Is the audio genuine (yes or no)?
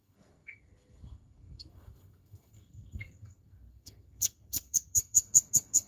no